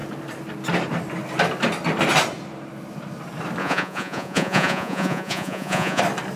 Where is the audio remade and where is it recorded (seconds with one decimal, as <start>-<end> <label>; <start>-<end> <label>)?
0.0-3.6 recorded; 3.6-6.0 remade; 6.0-6.4 recorded